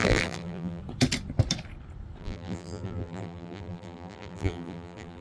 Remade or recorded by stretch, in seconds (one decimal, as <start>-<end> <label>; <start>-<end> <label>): 0.0-0.8 remade; 0.8-2.2 recorded; 2.2-5.2 remade